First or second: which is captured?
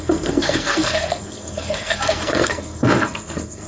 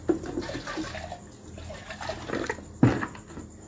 second